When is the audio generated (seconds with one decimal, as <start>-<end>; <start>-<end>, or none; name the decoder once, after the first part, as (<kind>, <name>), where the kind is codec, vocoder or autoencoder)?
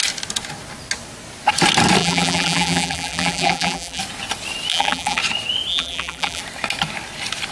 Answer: 2.0-4.0 (vocoder, BigVGAN v2); 4.7-5.2; 5.7-6.4